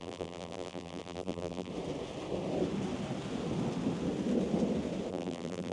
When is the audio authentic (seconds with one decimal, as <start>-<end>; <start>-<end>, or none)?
1.7-5.1